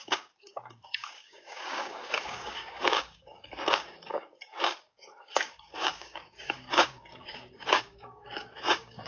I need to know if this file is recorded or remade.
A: remade